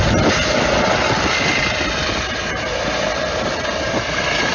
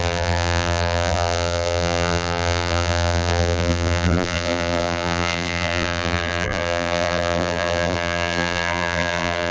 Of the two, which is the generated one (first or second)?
second